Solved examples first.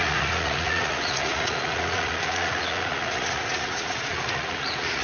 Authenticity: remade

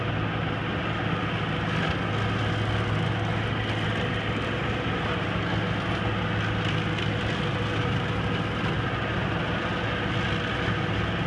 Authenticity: recorded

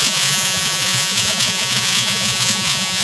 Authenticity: remade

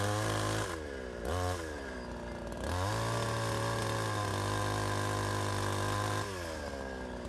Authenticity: recorded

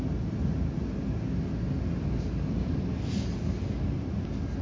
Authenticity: recorded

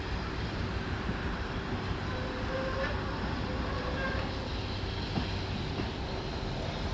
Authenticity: recorded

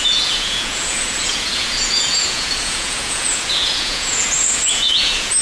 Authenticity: remade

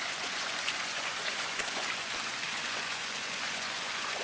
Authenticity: remade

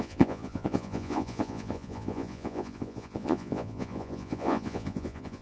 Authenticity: remade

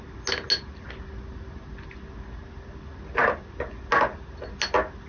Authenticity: recorded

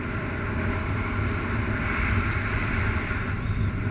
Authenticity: recorded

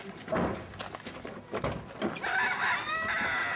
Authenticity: recorded